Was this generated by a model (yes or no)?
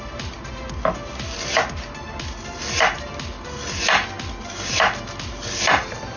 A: no